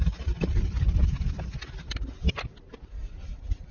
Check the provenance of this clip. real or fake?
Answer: real